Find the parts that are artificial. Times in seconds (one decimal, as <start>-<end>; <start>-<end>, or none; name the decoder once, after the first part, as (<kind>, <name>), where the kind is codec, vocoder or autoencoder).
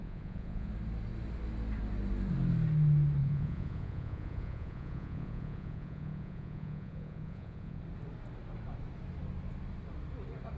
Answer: 0.0-0.7 (vocoder, Vocos); 3.2-7.8